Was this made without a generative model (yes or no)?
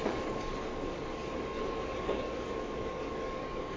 no